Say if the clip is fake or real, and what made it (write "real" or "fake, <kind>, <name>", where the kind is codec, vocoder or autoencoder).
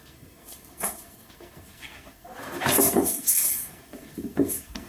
fake, codec, SNAC